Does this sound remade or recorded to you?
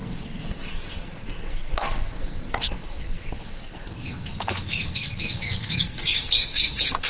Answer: remade